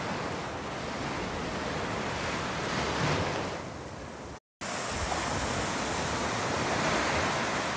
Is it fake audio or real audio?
real